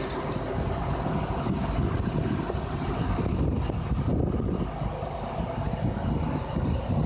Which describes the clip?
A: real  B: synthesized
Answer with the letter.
A